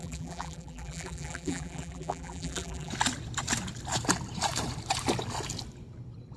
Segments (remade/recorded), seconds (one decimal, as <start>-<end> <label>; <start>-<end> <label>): 0.0-2.9 remade; 2.9-6.4 recorded